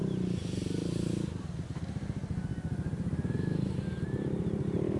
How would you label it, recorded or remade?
recorded